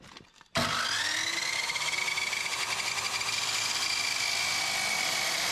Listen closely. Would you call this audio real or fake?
real